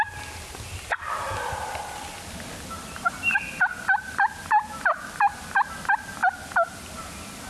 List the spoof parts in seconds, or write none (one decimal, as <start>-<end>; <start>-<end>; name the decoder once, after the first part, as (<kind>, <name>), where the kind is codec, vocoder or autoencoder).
none